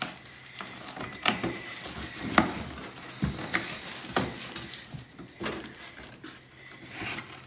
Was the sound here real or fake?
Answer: real